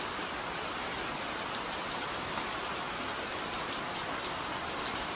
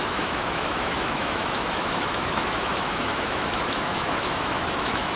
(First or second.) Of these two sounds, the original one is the first